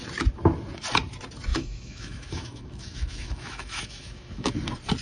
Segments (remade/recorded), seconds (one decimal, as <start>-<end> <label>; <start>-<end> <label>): 0.0-1.5 recorded; 1.5-4.5 remade; 4.5-5.0 recorded